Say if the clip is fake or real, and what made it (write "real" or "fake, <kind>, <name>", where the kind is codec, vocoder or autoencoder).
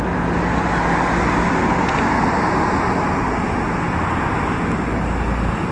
real